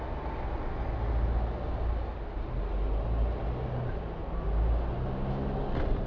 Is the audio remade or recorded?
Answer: recorded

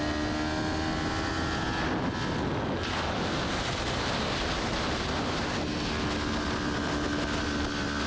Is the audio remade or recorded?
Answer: recorded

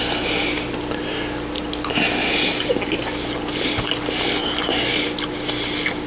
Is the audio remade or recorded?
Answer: recorded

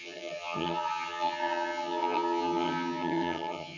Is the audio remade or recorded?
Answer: remade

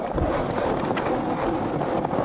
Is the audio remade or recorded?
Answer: recorded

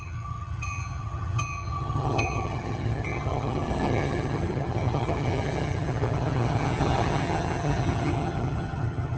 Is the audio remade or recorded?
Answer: remade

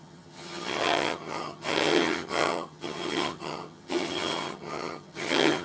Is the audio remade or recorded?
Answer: remade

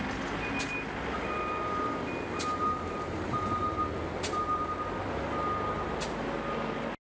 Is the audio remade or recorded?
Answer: recorded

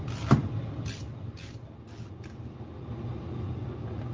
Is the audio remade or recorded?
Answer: recorded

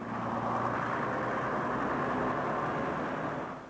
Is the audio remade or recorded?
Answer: recorded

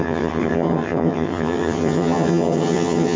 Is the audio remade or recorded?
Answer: remade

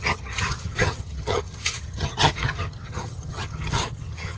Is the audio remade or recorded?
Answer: remade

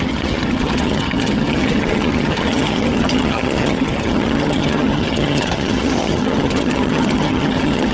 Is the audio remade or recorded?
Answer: remade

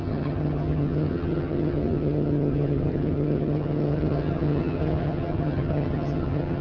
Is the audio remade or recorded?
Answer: remade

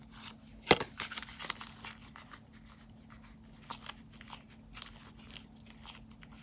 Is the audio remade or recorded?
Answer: recorded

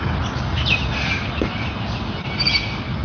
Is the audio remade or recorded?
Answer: recorded